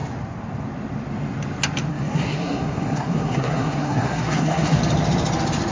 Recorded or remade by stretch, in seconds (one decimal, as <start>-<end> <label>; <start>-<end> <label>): 0.0-1.9 recorded; 1.9-4.8 remade; 4.8-5.7 recorded

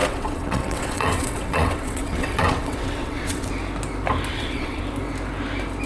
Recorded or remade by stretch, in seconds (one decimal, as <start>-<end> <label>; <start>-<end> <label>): 0.0-3.5 remade; 3.5-4.3 recorded; 4.3-4.8 remade; 4.8-5.9 recorded

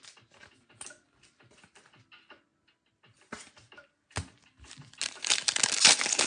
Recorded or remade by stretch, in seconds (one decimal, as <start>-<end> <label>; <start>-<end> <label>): 0.0-6.3 recorded

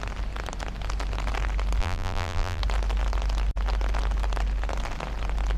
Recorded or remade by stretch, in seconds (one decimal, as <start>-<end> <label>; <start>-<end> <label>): 0.0-1.8 recorded; 1.8-2.6 remade; 2.6-5.6 recorded

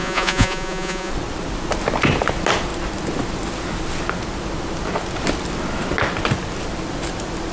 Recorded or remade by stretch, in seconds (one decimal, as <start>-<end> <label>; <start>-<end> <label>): 0.0-1.1 remade; 1.1-7.5 recorded